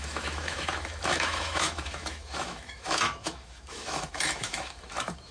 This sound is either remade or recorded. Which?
remade